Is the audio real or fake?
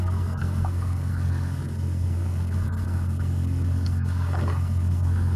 fake